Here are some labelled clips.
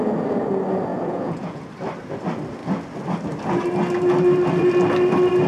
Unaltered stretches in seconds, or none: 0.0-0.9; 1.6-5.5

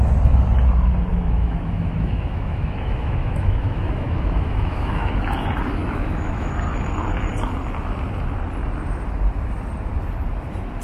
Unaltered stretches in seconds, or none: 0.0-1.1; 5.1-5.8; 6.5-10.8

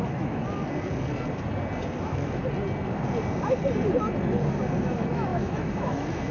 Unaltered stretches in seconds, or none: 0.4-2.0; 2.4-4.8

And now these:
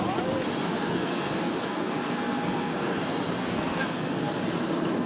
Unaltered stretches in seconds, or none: 0.0-0.7; 3.0-3.4; 4.3-5.1

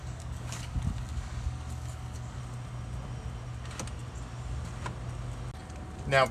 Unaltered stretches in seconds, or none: 2.4-6.3

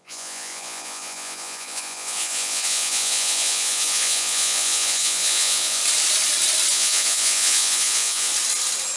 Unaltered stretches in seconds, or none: 5.8-6.7; 8.3-9.0

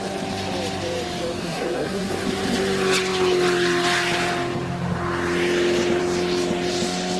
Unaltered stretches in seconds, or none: 0.0-1.4; 2.1-7.2